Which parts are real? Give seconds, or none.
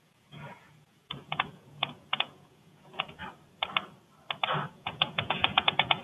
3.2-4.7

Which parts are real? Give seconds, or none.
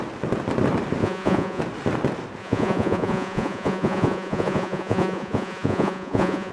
0.0-1.0; 1.6-2.4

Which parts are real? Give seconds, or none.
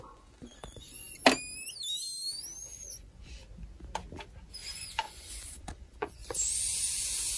1.2-2.6; 3.4-4.7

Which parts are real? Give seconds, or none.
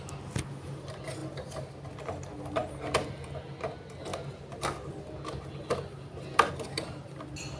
0.0-7.6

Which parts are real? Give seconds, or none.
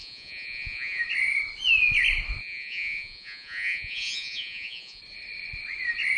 1.0-2.4; 5.0-6.2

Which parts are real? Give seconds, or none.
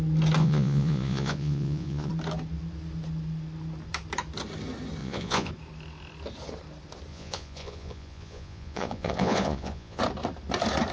0.0-0.4; 2.1-5.0; 5.5-7.1; 10.0-10.9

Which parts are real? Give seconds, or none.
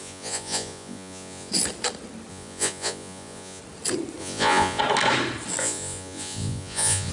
1.5-2.3; 3.6-4.2; 4.8-5.6